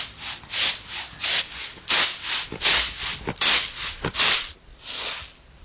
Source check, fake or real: real